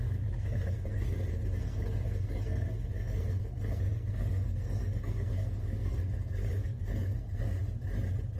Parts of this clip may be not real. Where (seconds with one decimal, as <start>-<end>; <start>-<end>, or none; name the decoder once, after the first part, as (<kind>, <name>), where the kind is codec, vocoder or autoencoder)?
0.0-7.6 (codec, SNAC)